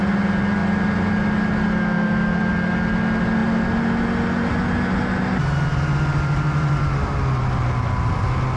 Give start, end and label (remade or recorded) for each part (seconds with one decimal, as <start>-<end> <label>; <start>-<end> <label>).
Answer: 0.0-8.6 recorded